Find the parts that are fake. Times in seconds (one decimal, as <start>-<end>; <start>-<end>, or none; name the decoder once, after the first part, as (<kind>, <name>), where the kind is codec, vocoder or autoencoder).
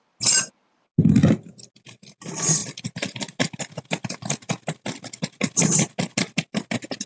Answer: none